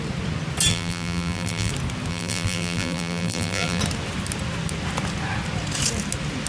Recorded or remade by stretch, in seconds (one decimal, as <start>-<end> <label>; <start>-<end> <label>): 0.0-0.7 recorded; 0.7-1.7 remade; 1.7-2.1 recorded; 2.1-3.8 remade; 3.8-6.5 recorded